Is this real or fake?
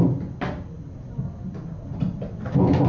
real